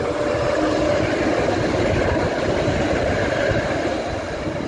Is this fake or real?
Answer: real